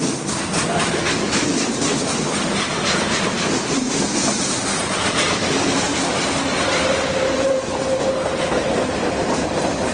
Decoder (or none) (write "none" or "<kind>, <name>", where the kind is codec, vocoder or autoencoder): none